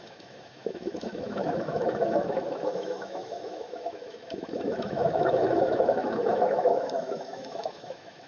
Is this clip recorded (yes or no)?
no